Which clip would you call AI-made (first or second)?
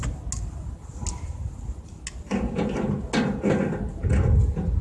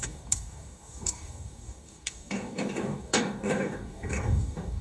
second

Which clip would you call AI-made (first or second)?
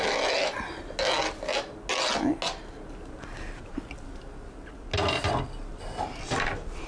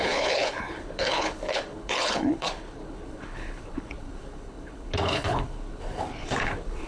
second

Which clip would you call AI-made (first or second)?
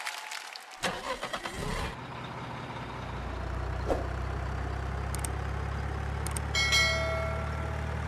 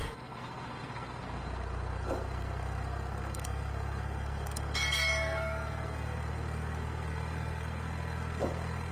second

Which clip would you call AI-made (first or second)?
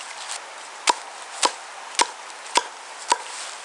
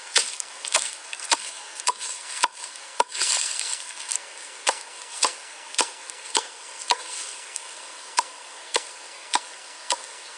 second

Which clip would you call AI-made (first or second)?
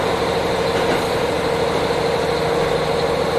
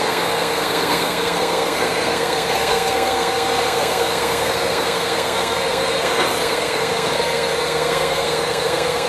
second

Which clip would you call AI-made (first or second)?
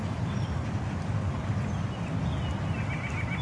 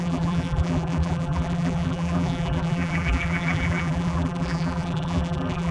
second